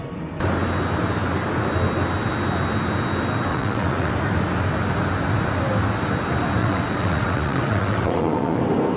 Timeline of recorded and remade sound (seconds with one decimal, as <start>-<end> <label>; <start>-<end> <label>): 0.0-3.5 recorded; 3.5-4.1 remade; 4.1-6.6 recorded; 6.6-8.6 remade; 8.6-9.0 recorded